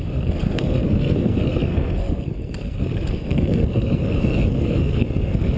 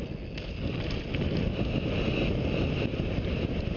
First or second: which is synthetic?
first